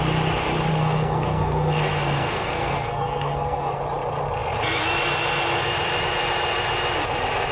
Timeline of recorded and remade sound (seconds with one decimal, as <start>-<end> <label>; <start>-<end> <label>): 0.0-0.7 recorded; 0.7-3.8 remade; 3.8-7.5 recorded